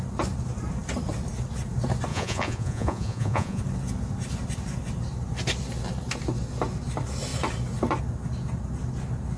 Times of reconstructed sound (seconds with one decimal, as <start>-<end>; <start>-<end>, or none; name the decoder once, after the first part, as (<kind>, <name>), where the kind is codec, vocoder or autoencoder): 2.1-3.6 (vocoder, Vocos)